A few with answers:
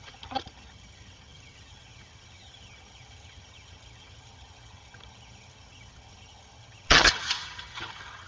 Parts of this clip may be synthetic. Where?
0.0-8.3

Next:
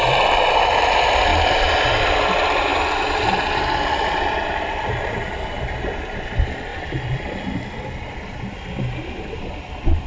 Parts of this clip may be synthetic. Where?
none

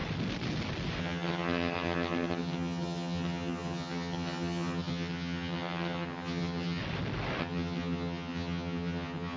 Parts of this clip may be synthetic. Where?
1.0-6.8; 7.4-9.4

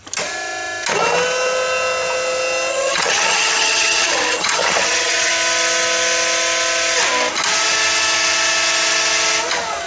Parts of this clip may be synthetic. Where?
2.7-5.3

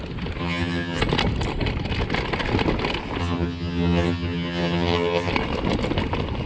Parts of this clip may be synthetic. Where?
0.4-1.0; 3.2-5.3

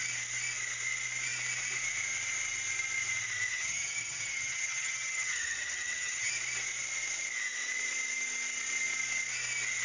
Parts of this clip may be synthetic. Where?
3.5-6.3

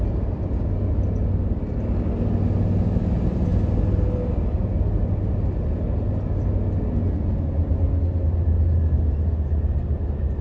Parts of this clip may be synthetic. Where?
none